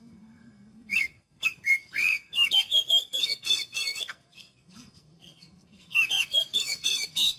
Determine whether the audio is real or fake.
fake